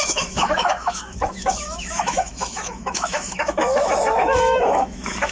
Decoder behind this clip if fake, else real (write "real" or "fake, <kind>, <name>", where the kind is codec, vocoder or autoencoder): fake, autoencoder, DAC-VAE